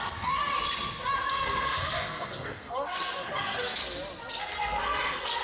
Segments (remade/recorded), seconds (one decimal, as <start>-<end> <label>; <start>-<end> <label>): 0.0-0.5 remade; 0.5-1.3 recorded; 1.3-3.8 remade; 3.8-4.4 recorded; 4.4-5.4 remade